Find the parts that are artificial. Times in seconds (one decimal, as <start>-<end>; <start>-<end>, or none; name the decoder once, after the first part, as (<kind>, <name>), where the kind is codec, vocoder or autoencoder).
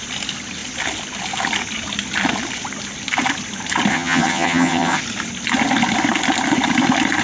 3.9-5.0 (vocoder, HiFi-GAN)